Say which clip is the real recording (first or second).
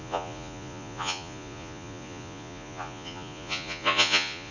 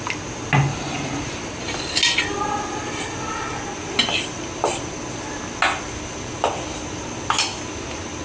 second